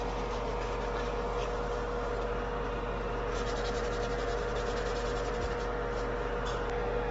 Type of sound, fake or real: real